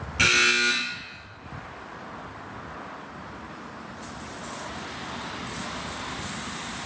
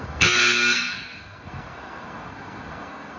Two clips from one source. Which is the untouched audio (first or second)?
first